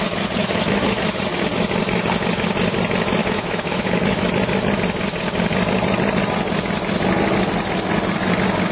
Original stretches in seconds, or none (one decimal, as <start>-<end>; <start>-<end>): 0.0-0.4; 1.2-3.2; 4.3-8.7